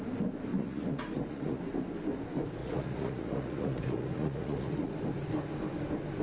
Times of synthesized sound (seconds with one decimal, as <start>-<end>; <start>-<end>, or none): 0.5-1.6; 2.6-4.9